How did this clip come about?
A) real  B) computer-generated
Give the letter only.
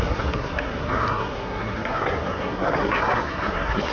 B